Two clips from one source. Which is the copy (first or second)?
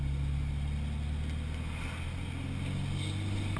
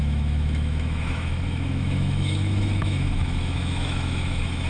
second